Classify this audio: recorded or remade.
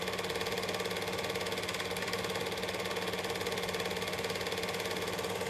recorded